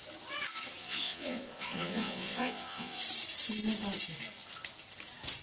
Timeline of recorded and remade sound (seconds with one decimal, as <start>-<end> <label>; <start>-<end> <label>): 0.0-0.8 recorded; 0.8-3.0 remade; 3.0-5.4 recorded